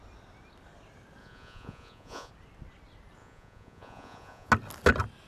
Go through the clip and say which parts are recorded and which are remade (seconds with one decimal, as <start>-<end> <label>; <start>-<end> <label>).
0.0-1.2 recorded; 1.2-2.3 remade; 2.3-3.2 recorded; 3.2-4.5 remade; 4.5-5.3 recorded